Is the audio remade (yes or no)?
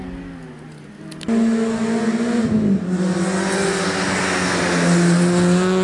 no